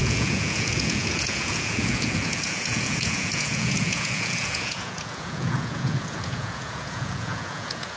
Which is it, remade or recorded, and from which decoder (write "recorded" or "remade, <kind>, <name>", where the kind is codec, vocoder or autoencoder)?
remade, vocoder, Vocos